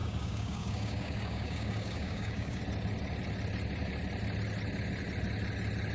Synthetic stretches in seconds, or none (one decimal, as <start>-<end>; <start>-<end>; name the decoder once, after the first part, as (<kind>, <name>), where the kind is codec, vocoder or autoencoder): 0.0-2.6 (codec, DAC)

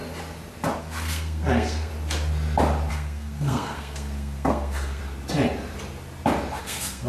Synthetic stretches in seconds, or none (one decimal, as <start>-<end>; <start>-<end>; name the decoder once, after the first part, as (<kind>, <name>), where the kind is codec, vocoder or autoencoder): 0.8-1.9 (codec, SNAC); 2.9-5.0; 6.6-7.1

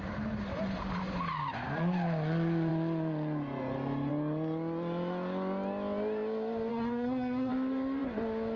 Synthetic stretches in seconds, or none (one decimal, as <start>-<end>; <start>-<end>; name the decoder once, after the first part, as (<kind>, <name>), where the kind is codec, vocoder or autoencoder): 6.7-7.5 (codec, SNAC)

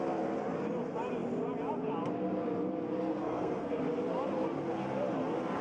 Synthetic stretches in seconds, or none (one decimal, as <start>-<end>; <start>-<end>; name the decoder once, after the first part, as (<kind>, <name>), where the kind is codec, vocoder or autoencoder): 3.1-3.8 (codec, SNAC)

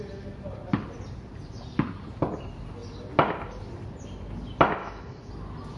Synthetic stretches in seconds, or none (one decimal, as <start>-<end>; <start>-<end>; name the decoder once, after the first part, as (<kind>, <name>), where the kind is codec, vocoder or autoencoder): 4.8-5.3 (autoencoder, DAC-VAE)

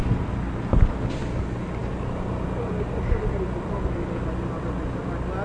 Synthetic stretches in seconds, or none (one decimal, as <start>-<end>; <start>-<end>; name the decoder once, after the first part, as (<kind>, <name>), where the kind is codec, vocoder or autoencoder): none